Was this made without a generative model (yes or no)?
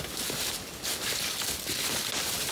yes